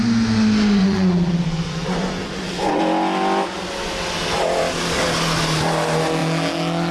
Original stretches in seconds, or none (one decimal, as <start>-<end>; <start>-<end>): 0.0-0.8; 2.8-6.9